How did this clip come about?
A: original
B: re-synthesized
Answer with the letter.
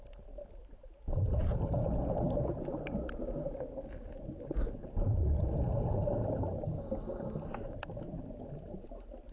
A